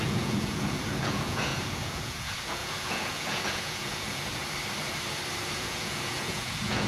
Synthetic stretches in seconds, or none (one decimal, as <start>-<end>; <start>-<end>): 0.0-4.4; 5.6-6.9